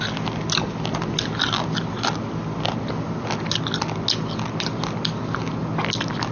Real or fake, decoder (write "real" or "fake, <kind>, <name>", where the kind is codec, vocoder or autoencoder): real